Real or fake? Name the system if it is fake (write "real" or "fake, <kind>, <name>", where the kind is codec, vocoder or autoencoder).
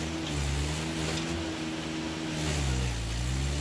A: real